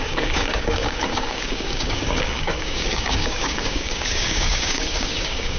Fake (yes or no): yes